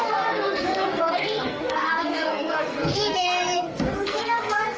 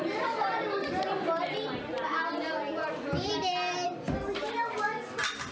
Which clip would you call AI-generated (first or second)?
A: first